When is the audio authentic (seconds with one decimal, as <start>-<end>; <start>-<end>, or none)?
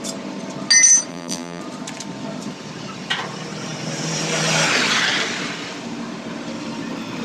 0.0-1.1; 1.6-7.2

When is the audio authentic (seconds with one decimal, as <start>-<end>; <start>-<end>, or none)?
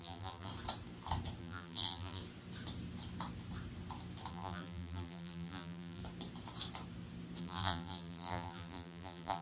0.5-1.4; 2.2-4.3; 6.0-7.4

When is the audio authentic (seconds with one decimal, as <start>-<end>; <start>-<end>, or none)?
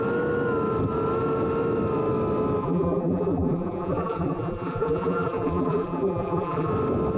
0.0-2.6; 6.7-7.2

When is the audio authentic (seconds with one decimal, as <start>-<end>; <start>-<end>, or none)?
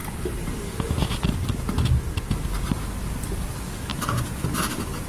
0.6-3.9